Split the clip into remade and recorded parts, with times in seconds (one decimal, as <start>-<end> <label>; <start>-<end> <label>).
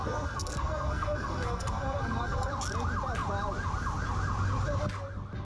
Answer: 0.0-2.5 remade; 2.5-5.4 recorded